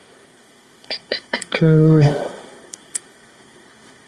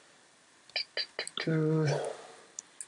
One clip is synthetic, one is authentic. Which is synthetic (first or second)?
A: first